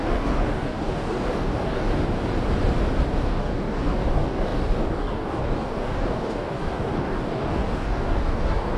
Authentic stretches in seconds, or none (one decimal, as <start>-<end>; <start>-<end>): 1.9-3.2

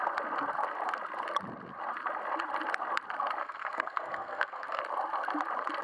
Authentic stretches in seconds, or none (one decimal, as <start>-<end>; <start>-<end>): 0.0-3.4; 4.8-5.8

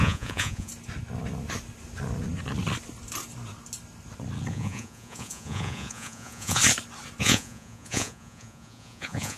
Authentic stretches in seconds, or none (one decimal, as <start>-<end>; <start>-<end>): 0.7-4.5; 6.6-7.2

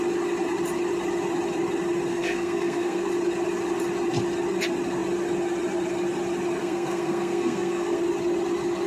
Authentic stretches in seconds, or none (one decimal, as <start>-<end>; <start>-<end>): 0.0-2.1; 3.1-6.6; 8.0-8.9